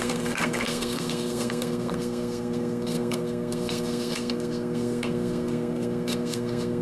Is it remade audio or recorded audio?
remade